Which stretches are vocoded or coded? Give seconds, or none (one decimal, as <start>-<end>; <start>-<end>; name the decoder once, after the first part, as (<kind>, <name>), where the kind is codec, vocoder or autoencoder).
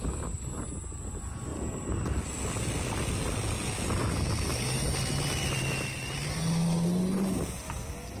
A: none